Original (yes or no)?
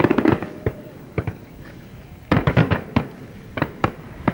no